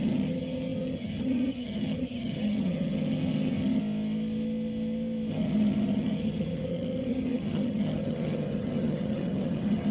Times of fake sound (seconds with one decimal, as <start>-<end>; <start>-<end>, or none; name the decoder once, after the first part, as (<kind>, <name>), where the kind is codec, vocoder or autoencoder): 0.0-3.8 (vocoder, HiFi-GAN); 5.3-9.9